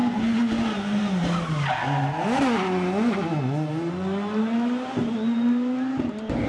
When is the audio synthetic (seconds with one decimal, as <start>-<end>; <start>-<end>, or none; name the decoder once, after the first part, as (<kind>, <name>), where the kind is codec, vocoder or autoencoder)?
none